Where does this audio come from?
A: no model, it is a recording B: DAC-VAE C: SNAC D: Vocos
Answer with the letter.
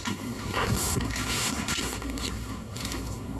C